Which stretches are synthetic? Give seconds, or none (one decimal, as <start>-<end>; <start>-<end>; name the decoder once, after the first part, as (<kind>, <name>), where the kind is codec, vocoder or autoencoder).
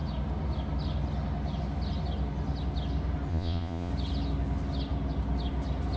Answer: 3.3-3.9 (vocoder, Vocos)